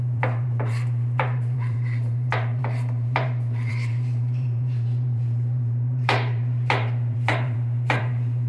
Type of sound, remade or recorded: remade